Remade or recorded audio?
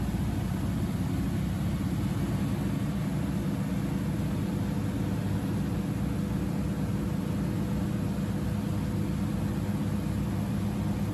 recorded